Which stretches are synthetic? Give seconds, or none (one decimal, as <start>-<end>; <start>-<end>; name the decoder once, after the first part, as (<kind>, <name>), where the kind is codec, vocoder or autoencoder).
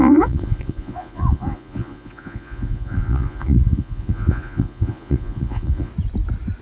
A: 0.0-5.9 (vocoder, Vocos)